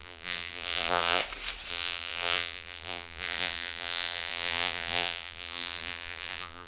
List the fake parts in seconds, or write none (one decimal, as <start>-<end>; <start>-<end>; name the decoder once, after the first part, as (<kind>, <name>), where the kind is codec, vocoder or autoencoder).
0.0-1.2 (vocoder, BigVGAN v2); 1.7-6.7